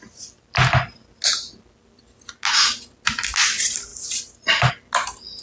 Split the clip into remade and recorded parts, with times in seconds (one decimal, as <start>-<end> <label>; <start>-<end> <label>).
0.0-5.4 recorded